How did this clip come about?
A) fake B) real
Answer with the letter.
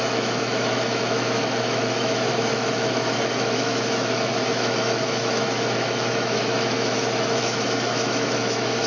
A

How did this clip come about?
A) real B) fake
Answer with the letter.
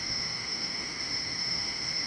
B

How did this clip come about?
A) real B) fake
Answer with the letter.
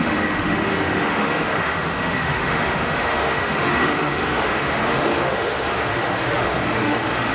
B